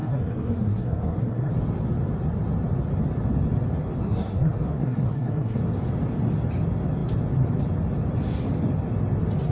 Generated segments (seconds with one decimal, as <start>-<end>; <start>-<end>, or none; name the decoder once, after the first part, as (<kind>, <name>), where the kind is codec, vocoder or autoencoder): 0.0-1.5 (codec, SNAC); 4.0-5.6